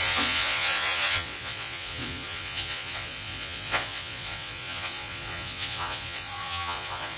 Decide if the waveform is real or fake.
fake